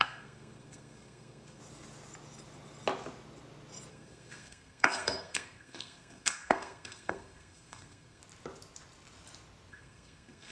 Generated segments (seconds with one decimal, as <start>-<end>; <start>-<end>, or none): 0.0-1.6; 3.9-8.2; 9.7-10.5